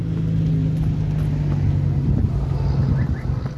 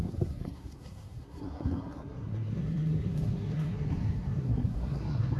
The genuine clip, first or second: first